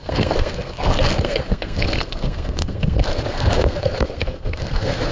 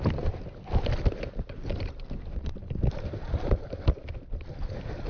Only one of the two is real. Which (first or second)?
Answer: second